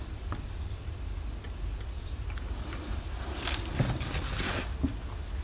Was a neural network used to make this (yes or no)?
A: no